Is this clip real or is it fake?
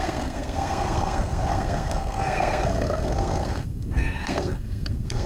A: fake